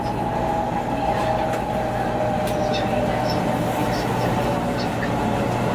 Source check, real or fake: real